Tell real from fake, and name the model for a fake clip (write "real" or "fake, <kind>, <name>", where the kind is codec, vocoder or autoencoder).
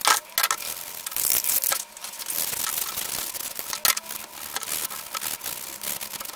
real